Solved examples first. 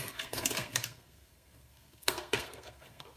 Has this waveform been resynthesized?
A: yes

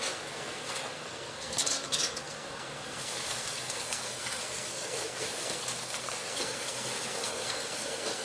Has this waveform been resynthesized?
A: yes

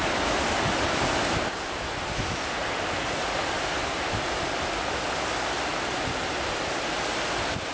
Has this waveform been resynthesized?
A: no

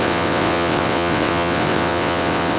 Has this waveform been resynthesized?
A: yes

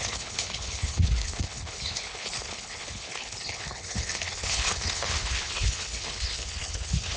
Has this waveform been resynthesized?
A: yes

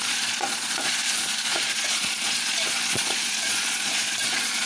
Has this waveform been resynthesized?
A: yes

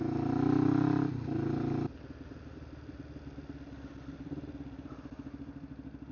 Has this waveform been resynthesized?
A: no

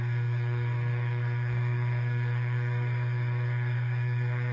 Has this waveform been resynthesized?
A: yes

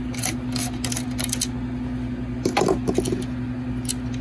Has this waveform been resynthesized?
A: no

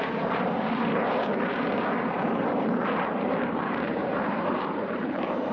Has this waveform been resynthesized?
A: yes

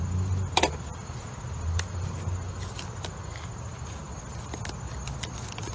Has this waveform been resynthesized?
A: no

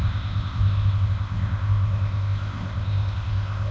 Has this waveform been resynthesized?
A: yes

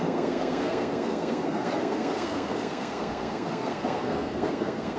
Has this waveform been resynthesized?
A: yes